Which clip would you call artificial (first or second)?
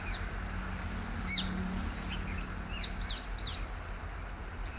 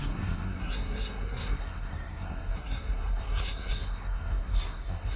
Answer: second